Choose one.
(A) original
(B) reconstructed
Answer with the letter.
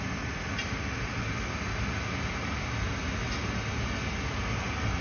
A